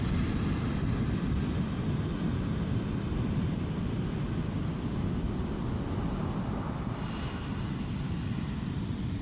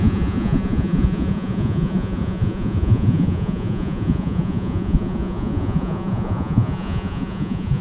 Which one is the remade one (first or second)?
second